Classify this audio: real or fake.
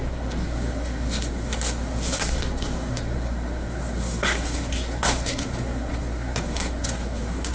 fake